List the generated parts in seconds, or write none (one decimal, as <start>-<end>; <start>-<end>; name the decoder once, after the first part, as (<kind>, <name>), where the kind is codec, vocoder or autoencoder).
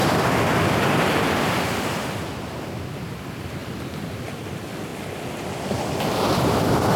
0.0-2.3 (vocoder, BigVGAN v2); 3.6-4.2; 4.9-7.0